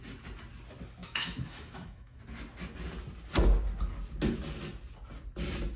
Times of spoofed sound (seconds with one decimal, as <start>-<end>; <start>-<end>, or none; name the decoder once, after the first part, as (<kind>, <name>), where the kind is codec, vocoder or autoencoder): 1.0-2.2 (autoencoder, DAC-VAE)